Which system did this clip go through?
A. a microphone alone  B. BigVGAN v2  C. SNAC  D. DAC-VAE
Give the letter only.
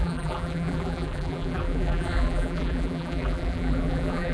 B